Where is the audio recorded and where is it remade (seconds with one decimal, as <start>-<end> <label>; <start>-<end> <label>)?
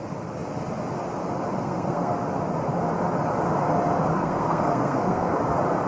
0.0-1.5 recorded; 1.5-2.1 remade; 2.1-4.1 recorded; 4.1-5.3 remade; 5.3-5.9 recorded